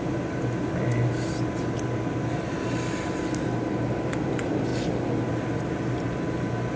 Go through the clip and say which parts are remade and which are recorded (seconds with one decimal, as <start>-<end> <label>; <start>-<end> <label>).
0.0-6.8 recorded